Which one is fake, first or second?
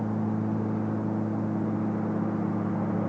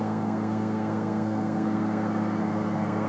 second